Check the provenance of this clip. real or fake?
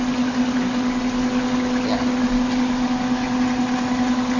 real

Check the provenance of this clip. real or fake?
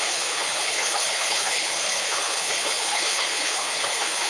fake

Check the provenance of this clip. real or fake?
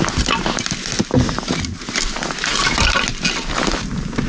real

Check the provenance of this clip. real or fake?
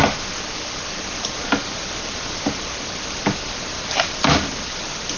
real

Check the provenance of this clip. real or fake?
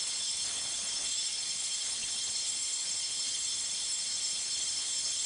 fake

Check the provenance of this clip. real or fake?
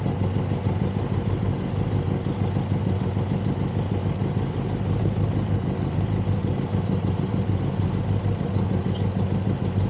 real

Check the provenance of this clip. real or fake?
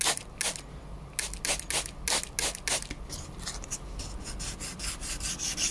real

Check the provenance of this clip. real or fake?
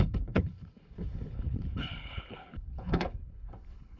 fake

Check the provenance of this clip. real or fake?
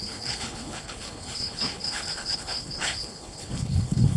fake